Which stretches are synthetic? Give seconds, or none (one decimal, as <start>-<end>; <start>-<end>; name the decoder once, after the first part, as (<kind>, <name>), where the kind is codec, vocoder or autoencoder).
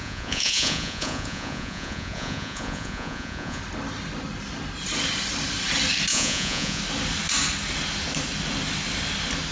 0.0-3.6 (vocoder, Vocos); 6.1-6.8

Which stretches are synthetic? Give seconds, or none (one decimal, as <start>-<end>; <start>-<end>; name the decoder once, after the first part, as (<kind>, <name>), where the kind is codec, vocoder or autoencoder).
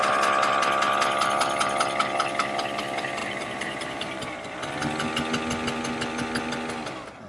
3.2-4.5 (vocoder, BigVGAN v2)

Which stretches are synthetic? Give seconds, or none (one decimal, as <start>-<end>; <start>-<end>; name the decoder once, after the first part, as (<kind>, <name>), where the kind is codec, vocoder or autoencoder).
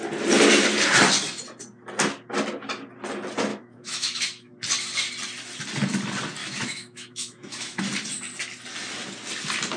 3.5-4.5 (autoencoder, DAC-VAE); 6.4-7.8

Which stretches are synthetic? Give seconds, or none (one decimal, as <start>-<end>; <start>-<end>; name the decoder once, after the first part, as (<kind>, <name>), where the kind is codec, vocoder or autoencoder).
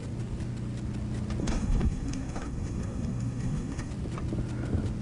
1.4-3.9 (codec, SNAC)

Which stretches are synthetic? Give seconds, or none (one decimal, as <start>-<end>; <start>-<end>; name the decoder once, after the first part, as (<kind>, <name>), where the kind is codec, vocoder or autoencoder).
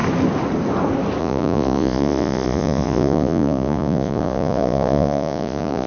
1.2-5.9 (vocoder, Vocos)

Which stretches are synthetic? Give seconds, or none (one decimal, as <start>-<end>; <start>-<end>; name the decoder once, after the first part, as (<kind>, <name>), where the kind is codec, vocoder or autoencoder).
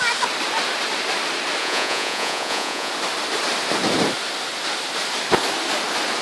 1.6-2.9 (vocoder, Vocos)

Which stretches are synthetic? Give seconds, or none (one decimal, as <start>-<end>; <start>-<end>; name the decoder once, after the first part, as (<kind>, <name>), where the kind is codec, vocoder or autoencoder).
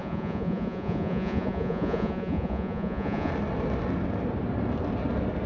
0.0-3.3 (vocoder, Vocos)